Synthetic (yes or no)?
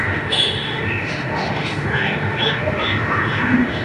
yes